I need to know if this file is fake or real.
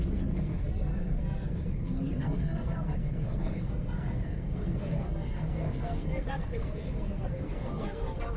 fake